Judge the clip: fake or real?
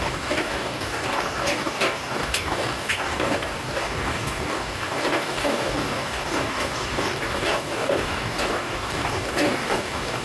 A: fake